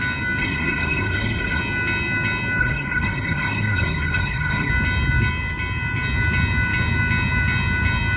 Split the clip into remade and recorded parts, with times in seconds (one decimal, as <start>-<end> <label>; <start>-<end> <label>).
0.0-0.4 recorded; 0.4-1.6 remade; 1.6-2.6 recorded; 2.6-4.7 remade; 4.7-8.2 recorded